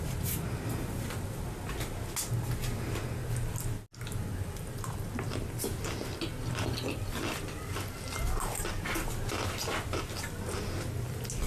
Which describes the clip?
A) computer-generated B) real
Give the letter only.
B